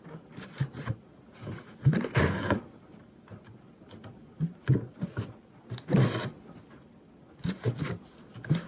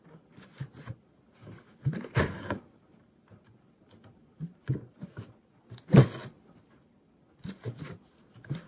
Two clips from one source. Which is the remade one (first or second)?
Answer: second